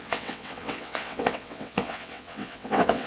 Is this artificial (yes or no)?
yes